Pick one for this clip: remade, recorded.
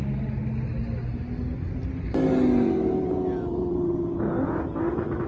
recorded